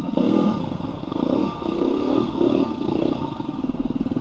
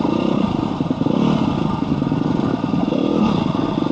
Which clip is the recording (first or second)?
second